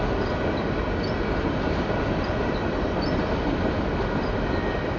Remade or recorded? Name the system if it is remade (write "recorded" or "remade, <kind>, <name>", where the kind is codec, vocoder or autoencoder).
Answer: recorded